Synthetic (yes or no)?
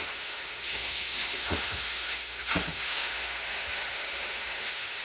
yes